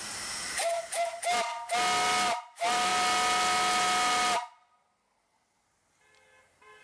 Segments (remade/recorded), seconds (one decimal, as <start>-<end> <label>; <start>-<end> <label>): 0.0-0.5 recorded; 0.5-1.1 remade; 1.1-6.8 recorded